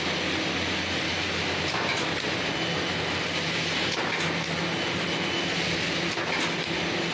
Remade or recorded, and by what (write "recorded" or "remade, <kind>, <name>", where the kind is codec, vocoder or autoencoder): recorded